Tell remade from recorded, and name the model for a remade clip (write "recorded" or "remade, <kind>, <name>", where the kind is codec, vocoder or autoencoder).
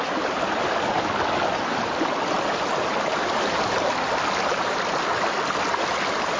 recorded